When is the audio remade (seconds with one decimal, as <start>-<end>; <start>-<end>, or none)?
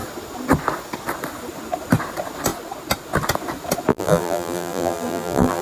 3.9-5.6